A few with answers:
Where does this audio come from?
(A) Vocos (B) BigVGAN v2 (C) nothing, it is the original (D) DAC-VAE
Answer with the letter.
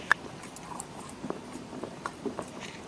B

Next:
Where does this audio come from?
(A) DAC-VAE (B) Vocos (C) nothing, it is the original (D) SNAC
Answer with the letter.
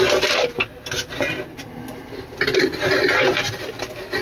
C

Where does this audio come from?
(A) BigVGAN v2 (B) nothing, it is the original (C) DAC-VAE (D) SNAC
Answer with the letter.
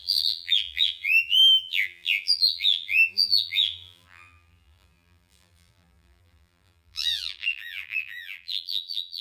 A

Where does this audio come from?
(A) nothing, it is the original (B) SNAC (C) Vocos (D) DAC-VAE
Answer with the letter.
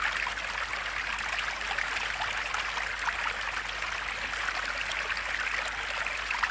A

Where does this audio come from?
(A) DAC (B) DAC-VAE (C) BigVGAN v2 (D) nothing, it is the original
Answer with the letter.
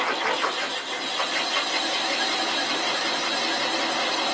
D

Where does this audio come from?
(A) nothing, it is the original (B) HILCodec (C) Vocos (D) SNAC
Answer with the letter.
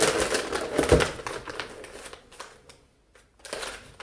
A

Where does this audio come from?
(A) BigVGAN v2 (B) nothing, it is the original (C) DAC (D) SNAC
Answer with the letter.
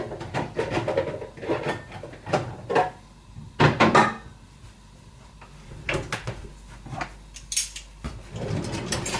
B